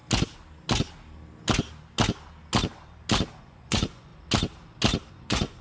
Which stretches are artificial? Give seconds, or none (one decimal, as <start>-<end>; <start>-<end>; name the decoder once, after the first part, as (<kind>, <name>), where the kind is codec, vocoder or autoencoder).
3.4-4.1 (vocoder, Vocos); 5.1-5.6